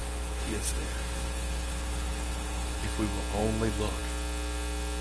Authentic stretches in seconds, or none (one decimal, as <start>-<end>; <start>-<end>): 2.8-5.0